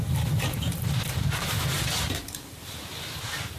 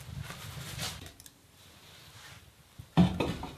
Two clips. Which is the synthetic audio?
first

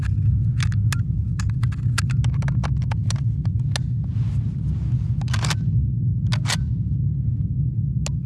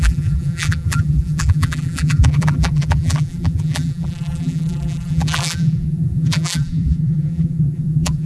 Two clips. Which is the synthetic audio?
second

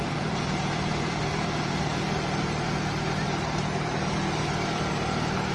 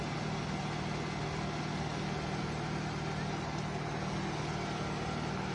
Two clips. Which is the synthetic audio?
first